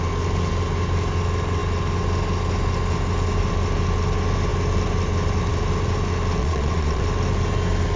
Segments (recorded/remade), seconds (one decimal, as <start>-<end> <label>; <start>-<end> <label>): 0.0-6.4 recorded; 6.4-7.0 remade; 7.0-8.0 recorded